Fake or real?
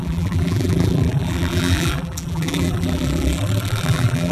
fake